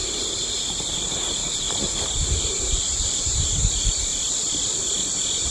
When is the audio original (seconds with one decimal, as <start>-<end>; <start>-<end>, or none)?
4.1-5.5